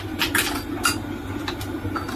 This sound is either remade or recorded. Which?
recorded